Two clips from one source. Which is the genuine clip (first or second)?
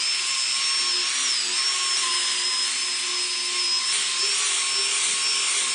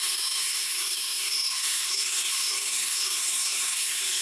first